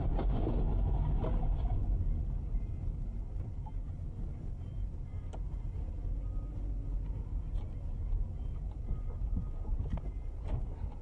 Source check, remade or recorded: recorded